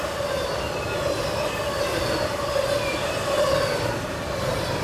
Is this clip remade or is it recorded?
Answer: recorded